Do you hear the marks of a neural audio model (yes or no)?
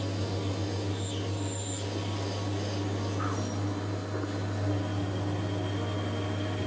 no